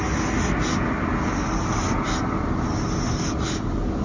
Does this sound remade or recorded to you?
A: recorded